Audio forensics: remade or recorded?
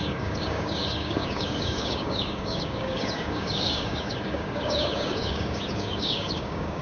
remade